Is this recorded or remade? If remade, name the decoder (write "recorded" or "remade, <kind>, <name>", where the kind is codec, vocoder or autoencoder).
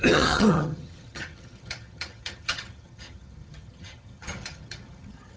remade, vocoder, HiFi-GAN